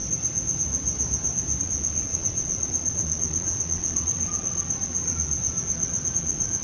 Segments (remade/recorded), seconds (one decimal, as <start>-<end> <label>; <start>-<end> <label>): 0.0-1.6 recorded; 1.6-6.6 remade